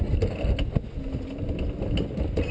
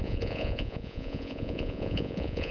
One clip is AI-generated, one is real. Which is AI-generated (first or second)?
second